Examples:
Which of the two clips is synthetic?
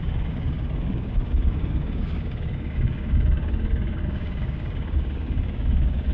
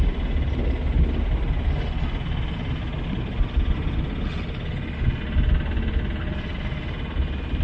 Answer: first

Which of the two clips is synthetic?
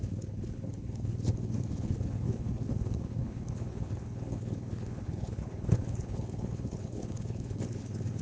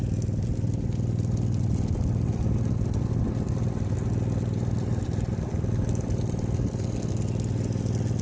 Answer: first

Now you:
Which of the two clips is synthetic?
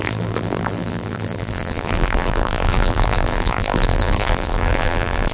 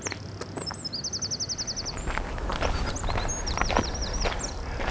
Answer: first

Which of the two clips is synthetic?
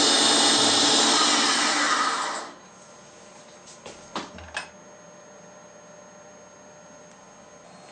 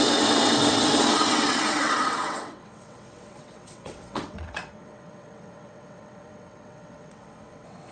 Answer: second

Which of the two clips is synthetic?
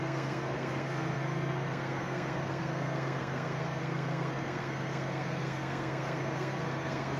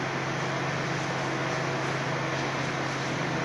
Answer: first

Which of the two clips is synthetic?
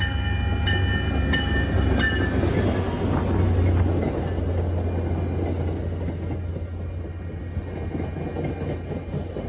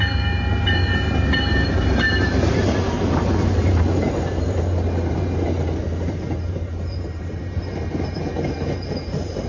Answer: second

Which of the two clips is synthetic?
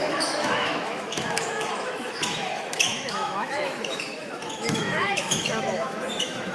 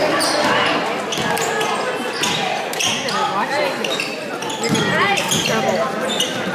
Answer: first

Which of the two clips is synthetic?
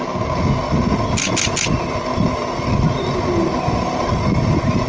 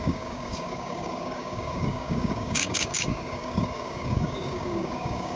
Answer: second